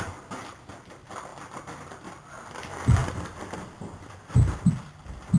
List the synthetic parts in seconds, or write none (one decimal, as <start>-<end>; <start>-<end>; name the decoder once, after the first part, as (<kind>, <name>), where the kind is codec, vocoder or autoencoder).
3.0-4.3 (vocoder, BigVGAN v2)